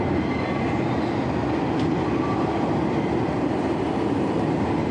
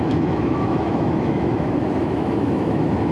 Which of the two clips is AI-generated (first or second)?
second